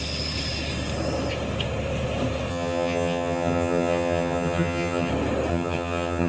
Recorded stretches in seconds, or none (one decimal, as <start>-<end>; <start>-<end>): 0.0-2.5; 5.1-5.5